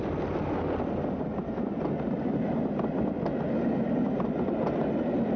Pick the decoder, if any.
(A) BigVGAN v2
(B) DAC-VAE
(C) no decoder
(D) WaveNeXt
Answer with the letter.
C